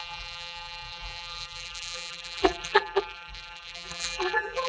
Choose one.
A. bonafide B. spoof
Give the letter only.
B